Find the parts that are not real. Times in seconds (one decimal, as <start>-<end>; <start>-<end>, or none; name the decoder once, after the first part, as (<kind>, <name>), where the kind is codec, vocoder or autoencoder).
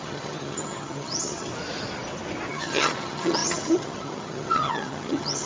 0.0-1.5 (vocoder, HiFi-GAN); 2.5-5.5